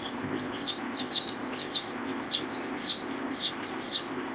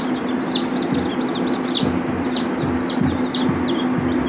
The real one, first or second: second